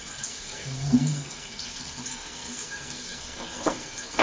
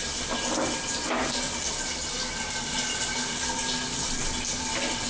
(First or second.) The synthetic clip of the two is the first